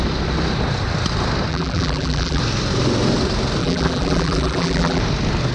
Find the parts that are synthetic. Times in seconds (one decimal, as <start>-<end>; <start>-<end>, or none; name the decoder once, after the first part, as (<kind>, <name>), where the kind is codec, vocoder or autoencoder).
1.5-2.4 (vocoder, BigVGAN v2); 3.6-5.0